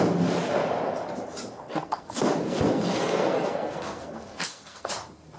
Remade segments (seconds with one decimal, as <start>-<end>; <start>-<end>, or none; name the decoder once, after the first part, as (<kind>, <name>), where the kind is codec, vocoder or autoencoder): 1.7-4.9 (codec, SNAC)